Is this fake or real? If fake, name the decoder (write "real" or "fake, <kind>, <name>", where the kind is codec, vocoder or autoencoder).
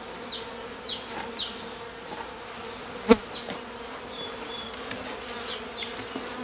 real